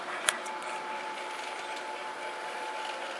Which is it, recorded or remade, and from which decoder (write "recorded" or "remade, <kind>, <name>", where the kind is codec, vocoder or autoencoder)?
recorded